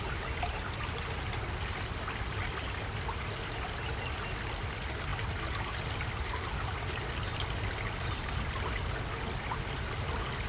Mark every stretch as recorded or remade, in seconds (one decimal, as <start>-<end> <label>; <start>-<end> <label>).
0.0-10.5 recorded